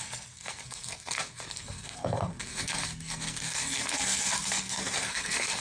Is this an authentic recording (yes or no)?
no